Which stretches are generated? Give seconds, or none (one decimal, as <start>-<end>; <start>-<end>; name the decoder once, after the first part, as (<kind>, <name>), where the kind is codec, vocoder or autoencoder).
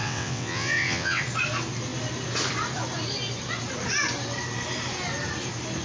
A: 0.0-1.2 (vocoder, WaveNeXt)